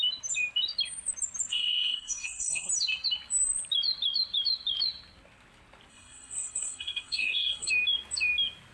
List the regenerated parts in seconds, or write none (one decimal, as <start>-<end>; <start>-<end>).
1.5-2.7; 5.9-7.7